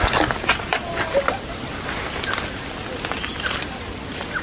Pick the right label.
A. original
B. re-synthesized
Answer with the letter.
A